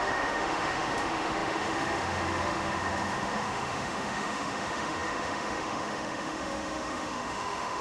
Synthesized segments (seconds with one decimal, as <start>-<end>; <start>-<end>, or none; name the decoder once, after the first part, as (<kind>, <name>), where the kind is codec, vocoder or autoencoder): 0.0-7.8 (autoencoder, DAC-VAE)